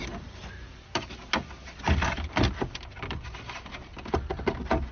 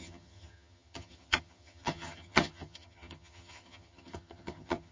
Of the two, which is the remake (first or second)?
second